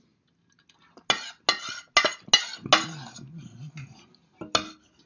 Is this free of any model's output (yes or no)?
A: yes